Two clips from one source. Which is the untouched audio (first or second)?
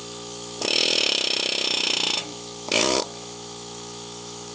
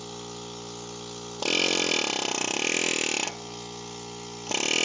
second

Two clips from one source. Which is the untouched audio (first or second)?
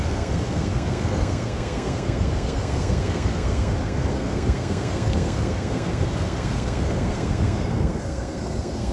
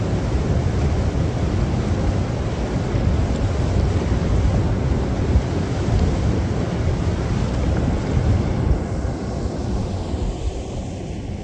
second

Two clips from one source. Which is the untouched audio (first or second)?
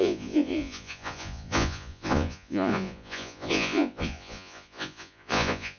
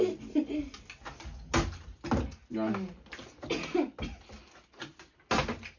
second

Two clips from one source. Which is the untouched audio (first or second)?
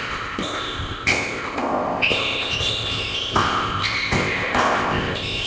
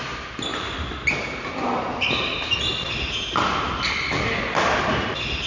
second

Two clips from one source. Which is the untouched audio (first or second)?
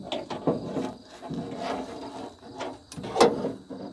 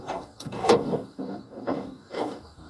first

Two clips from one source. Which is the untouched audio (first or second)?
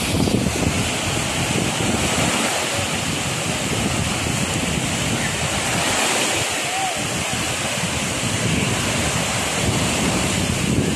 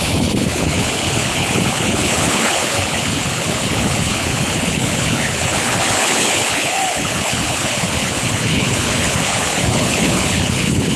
first